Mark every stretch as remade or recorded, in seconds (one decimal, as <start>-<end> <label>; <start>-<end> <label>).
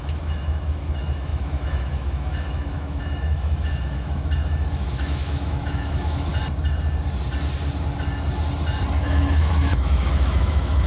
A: 0.0-6.3 remade; 6.3-9.0 recorded; 9.0-10.9 remade